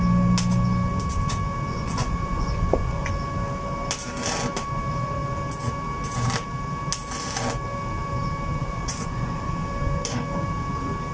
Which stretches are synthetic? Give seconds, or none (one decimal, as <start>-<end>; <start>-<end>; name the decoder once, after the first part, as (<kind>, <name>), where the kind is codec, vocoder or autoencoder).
1.7-3.1 (vocoder, Vocos); 8.6-9.5